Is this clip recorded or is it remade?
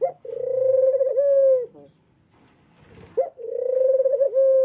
recorded